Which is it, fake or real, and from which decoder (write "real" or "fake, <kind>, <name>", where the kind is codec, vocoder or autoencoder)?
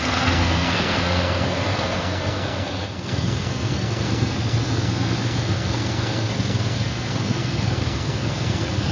fake, codec, SNAC